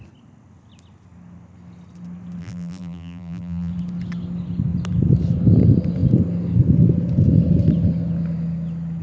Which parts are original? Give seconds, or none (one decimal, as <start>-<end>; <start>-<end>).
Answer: 0.0-2.4; 3.7-9.0